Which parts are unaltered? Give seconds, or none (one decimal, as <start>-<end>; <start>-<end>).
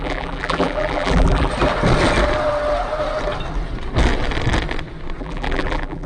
1.5-5.2